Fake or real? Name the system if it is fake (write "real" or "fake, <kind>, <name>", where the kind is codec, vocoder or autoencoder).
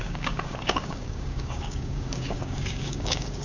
fake, codec, DAC